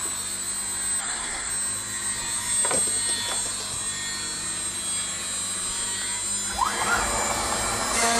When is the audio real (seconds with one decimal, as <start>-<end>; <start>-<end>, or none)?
0.0-1.0; 1.5-8.2